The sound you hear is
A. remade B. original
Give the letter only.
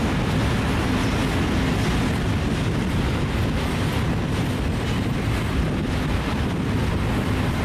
B